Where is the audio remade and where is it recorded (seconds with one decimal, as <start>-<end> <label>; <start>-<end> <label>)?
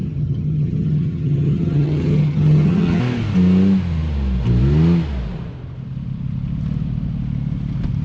0.0-3.0 remade; 3.0-8.0 recorded